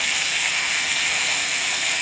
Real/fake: fake